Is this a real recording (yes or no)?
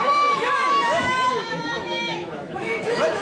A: no